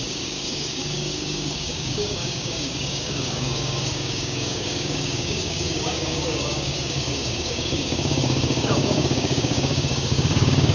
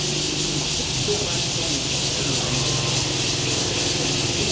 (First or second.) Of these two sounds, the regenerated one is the first